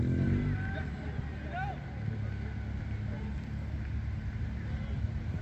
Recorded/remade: recorded